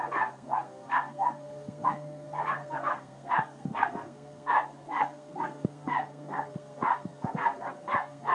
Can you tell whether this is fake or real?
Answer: fake